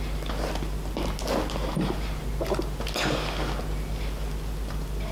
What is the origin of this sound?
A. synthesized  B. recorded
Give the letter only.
B